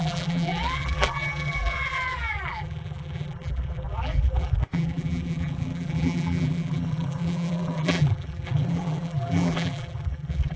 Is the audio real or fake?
fake